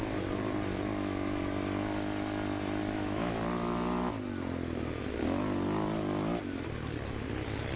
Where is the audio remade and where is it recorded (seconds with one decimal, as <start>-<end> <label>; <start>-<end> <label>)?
0.0-0.9 recorded; 0.9-1.4 remade; 1.4-2.8 recorded; 2.8-3.3 remade; 3.3-7.8 recorded